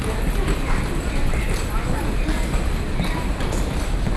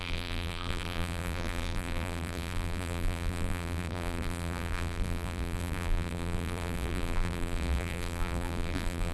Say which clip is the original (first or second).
first